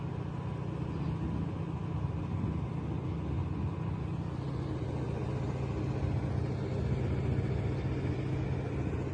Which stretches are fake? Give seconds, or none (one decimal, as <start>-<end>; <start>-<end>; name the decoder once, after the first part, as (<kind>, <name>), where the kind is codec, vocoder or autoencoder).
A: none